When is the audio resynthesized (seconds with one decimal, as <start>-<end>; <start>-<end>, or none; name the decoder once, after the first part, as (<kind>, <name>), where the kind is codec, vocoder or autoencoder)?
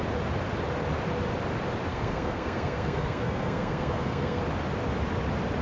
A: 1.9-4.4 (codec, SNAC)